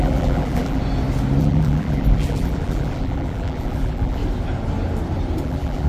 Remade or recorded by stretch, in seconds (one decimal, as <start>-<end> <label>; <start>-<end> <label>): 0.0-0.8 remade; 0.8-1.4 recorded; 1.4-4.2 remade; 4.2-5.4 recorded; 5.4-5.9 remade